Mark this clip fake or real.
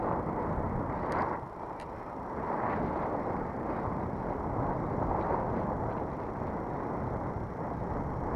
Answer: real